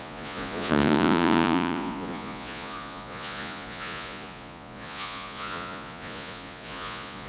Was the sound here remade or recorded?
remade